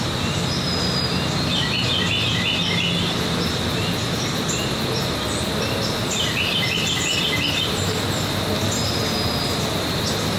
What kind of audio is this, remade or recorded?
recorded